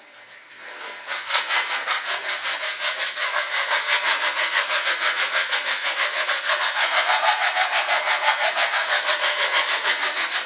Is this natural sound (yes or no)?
no